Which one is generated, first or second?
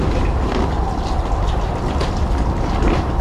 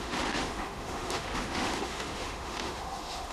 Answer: second